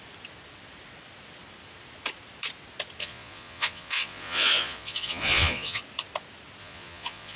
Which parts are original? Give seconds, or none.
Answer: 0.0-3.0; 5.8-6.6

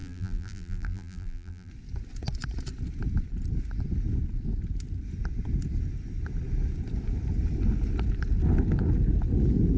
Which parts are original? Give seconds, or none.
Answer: 1.7-9.8